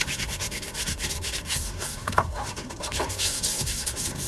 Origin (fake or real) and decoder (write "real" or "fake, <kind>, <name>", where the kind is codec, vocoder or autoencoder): fake, codec, SNAC